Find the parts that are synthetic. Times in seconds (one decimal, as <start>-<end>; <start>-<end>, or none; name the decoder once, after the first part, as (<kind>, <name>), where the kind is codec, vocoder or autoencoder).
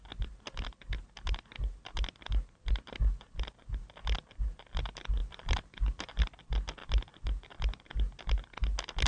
5.2-6.2 (vocoder, BigVGAN v2)